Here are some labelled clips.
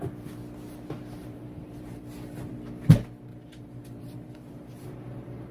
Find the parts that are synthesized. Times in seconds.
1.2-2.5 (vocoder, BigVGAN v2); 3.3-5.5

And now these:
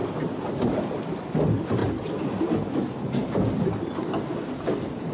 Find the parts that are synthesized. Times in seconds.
none